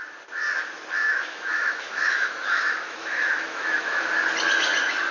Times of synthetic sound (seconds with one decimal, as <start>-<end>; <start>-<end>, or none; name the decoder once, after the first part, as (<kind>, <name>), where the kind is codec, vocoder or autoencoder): 1.0-4.0 (autoencoder, DAC-VAE)